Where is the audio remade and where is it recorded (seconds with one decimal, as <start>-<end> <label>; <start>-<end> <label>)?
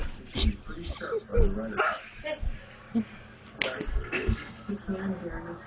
0.0-3.9 recorded; 3.9-4.7 remade; 4.7-5.7 recorded